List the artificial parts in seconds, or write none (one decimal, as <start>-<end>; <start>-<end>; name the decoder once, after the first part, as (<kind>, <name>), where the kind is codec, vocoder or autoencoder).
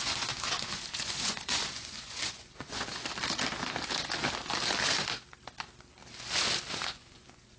0.0-3.0 (vocoder, Vocos); 6.7-7.6